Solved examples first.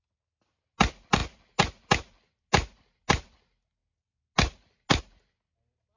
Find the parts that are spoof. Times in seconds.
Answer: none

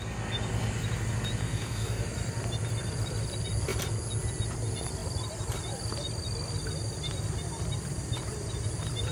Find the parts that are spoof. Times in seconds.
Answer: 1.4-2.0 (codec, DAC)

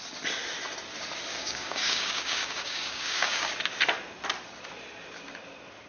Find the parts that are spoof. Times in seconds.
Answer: 1.3-3.5 (codec, DAC)